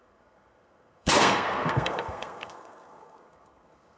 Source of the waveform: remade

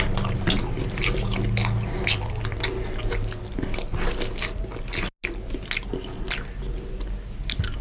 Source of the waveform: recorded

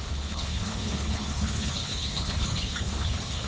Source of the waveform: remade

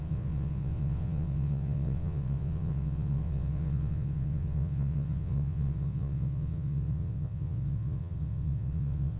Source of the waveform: remade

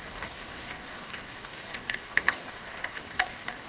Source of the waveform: remade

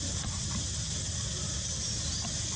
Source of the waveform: recorded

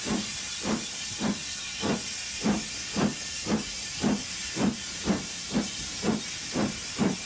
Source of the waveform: recorded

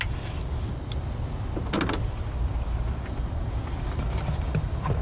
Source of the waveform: recorded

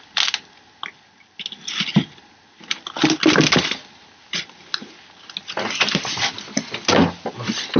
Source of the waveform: recorded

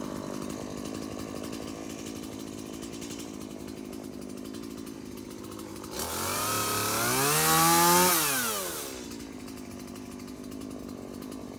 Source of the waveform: recorded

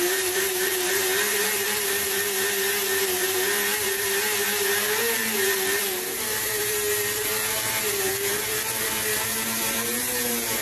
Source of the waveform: remade